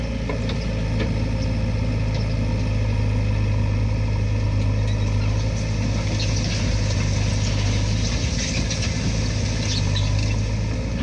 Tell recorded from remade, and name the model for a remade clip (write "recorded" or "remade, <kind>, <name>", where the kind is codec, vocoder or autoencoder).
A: recorded